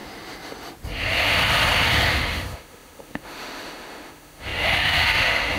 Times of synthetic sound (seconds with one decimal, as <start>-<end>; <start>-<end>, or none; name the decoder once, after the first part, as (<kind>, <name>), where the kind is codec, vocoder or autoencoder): 2.1-5.6 (autoencoder, DAC-VAE)